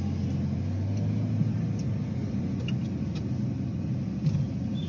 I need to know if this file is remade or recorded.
recorded